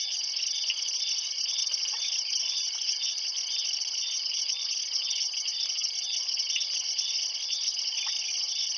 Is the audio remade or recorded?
recorded